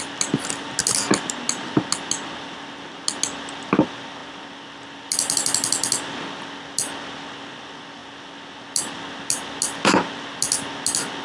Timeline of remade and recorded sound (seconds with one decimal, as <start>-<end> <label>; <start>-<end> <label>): 0.0-11.2 recorded

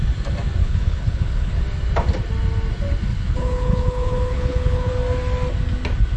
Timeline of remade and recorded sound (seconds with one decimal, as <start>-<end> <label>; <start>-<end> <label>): 0.0-0.6 recorded; 0.6-1.6 remade; 1.6-3.1 recorded; 3.1-4.9 remade; 4.9-6.2 recorded

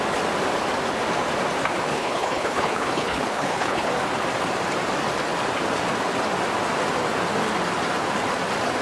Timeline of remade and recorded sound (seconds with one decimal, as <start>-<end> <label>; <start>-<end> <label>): 0.0-1.9 recorded; 1.9-3.9 remade; 3.9-8.8 recorded

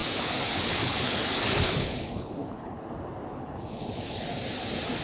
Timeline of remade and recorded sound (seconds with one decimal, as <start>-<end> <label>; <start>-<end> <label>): 0.0-2.8 remade; 2.8-3.3 recorded; 3.3-4.3 remade; 4.3-5.0 recorded

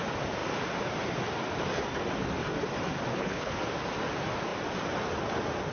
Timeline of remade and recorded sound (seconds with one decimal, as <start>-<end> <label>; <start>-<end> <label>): 0.0-3.1 recorded; 3.1-3.6 remade; 3.6-5.7 recorded

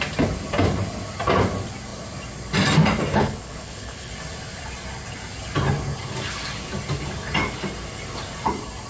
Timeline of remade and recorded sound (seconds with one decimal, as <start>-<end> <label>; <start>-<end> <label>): 0.0-3.1 recorded; 3.1-4.1 remade; 4.1-8.9 recorded